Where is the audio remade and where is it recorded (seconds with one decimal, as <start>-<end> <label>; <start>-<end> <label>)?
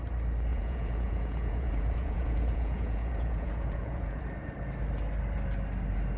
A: 0.0-0.5 recorded; 0.5-4.2 remade; 4.2-6.2 recorded